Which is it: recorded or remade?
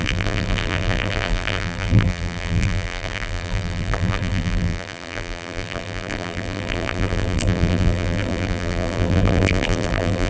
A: remade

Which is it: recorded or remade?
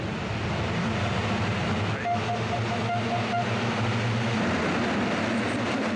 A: recorded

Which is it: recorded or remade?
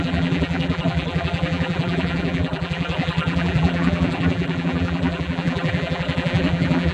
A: remade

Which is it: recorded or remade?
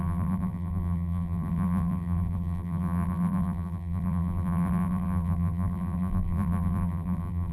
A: remade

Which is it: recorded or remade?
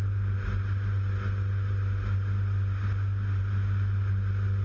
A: recorded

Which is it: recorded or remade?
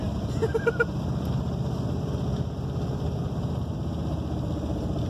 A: recorded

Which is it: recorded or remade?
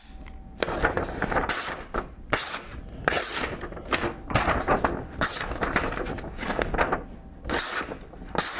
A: recorded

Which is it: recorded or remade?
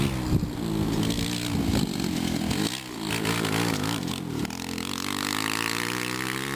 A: recorded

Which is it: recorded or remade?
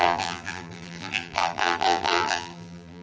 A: remade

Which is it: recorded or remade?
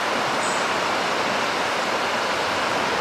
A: recorded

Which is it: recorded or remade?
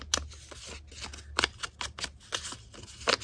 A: recorded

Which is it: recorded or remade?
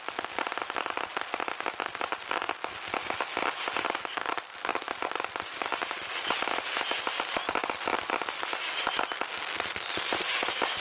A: recorded